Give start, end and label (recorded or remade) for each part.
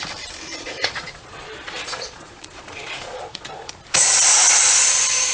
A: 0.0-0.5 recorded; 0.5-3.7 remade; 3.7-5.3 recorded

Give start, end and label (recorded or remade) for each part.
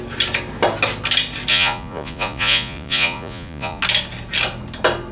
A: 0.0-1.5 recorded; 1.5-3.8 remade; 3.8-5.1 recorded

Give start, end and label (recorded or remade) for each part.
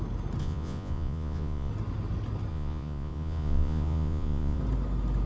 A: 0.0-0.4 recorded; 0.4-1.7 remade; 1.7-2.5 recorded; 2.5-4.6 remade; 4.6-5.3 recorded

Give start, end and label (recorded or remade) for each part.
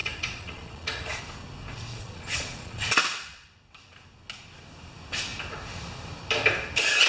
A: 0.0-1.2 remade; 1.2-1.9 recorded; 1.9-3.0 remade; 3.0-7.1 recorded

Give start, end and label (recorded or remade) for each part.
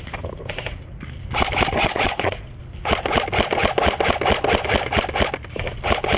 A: 0.0-1.8 recorded; 1.8-2.6 remade; 2.6-6.2 recorded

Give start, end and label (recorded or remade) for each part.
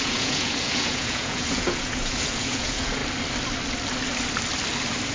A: 0.0-3.0 remade; 3.0-5.1 recorded